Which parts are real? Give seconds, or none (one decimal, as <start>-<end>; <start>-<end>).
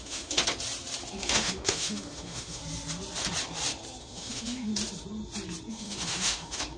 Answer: 0.4-1.2; 2.6-4.0; 4.7-5.7